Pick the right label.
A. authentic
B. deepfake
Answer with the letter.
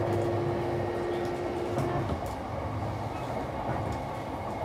A